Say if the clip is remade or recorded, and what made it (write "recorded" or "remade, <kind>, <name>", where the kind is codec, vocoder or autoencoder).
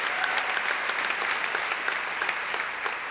recorded